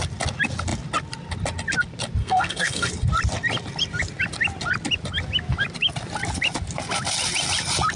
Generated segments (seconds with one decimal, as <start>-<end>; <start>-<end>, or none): 2.2-2.9